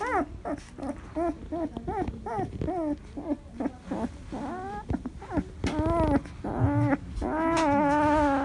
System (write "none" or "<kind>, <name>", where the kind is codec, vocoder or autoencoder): none